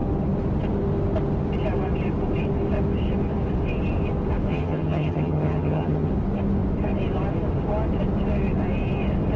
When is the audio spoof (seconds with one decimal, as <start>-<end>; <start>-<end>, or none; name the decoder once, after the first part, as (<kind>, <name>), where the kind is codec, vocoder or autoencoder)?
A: 4.5-6.1 (vocoder, HiFi-GAN)

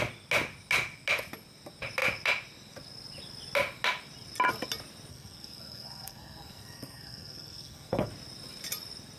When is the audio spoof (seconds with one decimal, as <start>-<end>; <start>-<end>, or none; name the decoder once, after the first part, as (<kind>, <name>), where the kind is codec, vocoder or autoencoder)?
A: 5.1-8.1 (codec, SNAC)